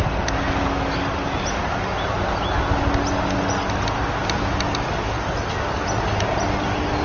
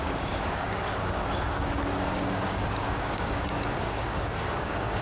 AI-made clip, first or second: second